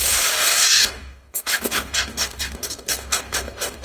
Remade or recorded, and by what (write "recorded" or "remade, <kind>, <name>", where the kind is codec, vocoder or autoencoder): remade, codec, DAC